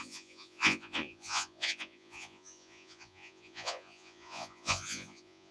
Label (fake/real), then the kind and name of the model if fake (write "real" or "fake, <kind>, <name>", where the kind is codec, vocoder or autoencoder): fake, vocoder, Vocos